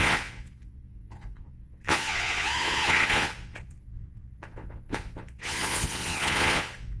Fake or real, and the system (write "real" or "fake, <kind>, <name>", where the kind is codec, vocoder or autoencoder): fake, vocoder, Vocos